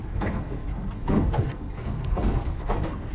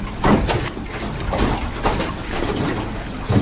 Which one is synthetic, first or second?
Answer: first